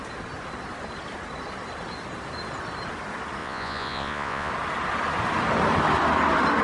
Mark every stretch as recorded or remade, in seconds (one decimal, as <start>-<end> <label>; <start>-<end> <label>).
0.0-3.4 recorded; 3.4-4.5 remade; 4.5-6.6 recorded